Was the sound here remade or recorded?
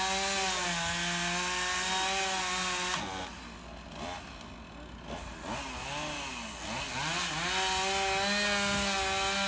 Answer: recorded